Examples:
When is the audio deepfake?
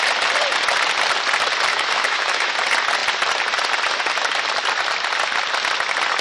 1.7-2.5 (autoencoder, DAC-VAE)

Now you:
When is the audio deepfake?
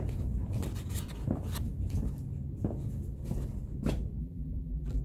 4.2-5.0 (vocoder, BigVGAN v2)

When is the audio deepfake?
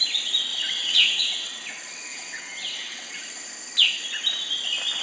0.5-1.7 (vocoder, WaveNeXt); 2.1-3.1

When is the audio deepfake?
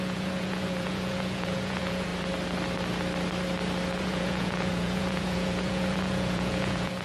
0.0-2.1 (vocoder, Vocos); 4.0-7.0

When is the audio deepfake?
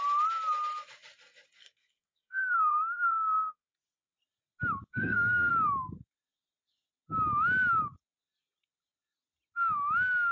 1.6-3.7 (codec, SNAC); 4.9-5.5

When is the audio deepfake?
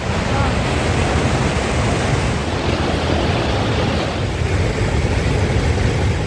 none